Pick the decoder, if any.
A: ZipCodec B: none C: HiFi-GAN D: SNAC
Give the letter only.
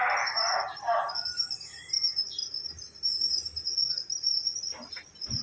B